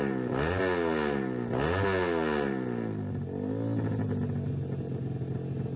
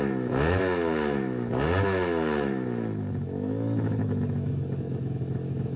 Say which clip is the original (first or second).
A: first